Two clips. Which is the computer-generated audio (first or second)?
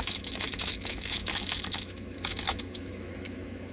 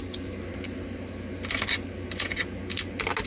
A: first